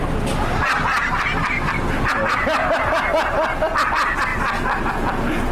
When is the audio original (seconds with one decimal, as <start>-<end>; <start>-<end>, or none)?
0.0-5.5